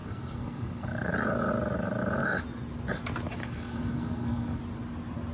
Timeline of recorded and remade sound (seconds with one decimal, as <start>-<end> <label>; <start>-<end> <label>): 0.0-1.1 remade; 1.1-3.4 recorded; 3.4-4.6 remade; 4.6-5.3 recorded